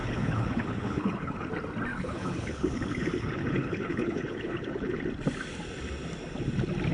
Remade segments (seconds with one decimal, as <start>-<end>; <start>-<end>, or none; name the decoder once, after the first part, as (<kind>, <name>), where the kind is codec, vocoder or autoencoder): 0.0-1.5 (codec, HILCodec); 1.9-5.0